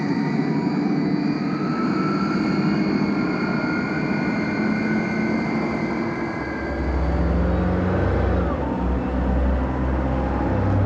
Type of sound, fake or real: real